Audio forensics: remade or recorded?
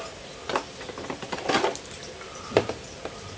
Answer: recorded